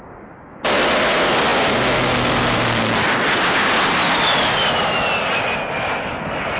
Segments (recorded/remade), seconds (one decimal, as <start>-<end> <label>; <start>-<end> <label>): 0.0-6.6 recorded